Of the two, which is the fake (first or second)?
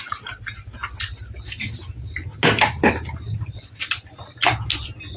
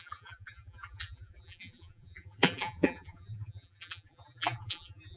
second